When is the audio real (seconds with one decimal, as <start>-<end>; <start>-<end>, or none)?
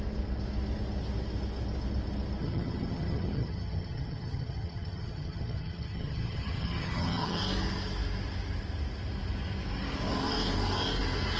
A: 0.0-2.4; 7.4-11.4